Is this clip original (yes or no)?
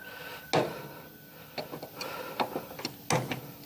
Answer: yes